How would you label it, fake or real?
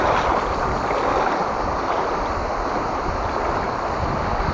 real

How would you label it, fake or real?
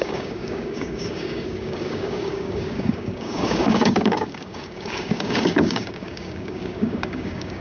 fake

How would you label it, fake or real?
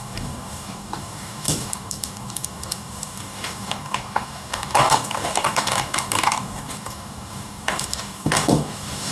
fake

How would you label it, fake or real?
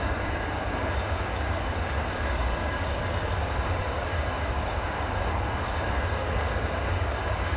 fake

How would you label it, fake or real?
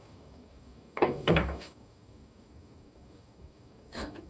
fake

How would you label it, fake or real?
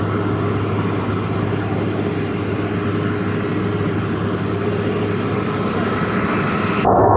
real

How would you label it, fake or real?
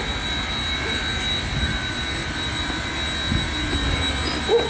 real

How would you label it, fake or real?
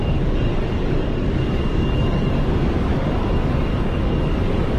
fake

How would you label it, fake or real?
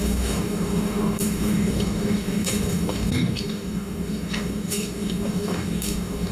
fake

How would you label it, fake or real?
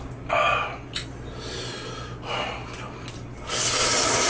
real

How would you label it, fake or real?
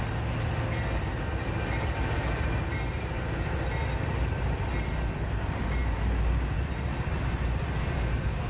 real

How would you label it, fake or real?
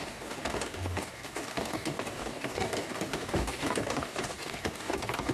fake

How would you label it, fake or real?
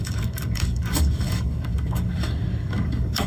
fake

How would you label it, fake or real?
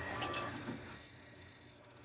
fake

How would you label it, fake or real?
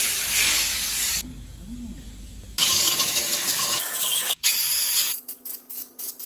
fake